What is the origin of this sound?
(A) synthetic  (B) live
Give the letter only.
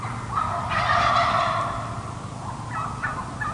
B